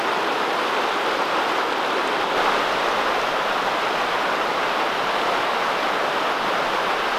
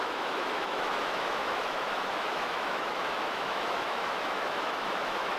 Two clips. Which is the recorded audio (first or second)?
first